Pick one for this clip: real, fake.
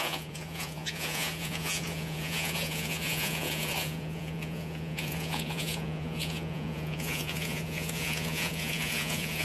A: fake